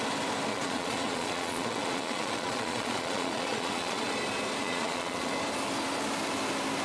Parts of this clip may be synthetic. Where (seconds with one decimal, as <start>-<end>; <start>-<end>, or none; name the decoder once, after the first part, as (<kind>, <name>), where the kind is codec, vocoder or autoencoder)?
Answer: 0.5-4.1 (vocoder, Vocos); 4.6-5.3